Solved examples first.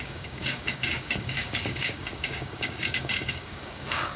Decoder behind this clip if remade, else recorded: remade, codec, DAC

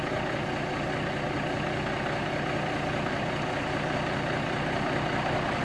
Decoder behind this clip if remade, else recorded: recorded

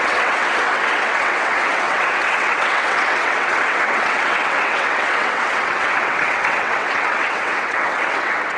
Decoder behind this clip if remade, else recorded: remade, vocoder, WaveNeXt